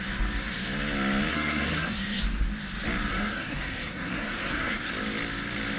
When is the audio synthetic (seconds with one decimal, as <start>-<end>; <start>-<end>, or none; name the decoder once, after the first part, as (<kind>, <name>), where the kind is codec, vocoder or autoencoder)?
1.3-2.2 (codec, SNAC); 3.1-4.9